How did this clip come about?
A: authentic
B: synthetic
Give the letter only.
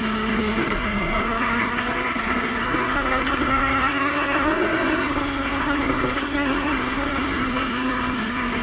B